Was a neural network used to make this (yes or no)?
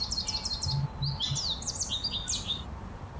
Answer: no